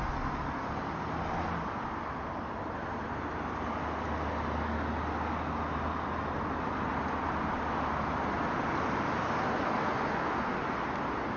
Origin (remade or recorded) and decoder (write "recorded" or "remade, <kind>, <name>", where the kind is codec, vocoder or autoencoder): recorded